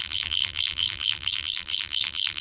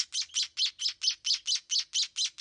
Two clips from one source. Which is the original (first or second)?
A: second